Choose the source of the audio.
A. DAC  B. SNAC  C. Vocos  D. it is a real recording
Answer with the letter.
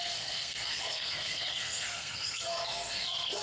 B